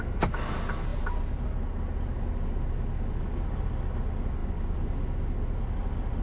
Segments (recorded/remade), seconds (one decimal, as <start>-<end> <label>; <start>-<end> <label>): 0.0-6.2 recorded